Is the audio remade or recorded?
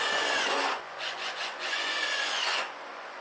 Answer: remade